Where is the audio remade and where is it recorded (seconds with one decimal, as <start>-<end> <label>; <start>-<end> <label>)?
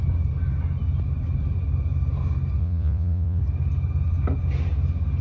0.0-2.6 recorded; 2.6-3.4 remade; 3.4-5.2 recorded